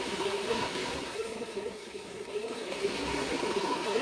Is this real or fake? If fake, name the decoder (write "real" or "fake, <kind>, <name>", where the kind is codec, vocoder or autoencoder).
fake, codec, SNAC